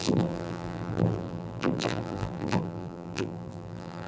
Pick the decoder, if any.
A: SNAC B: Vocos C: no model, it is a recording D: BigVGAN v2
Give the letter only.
D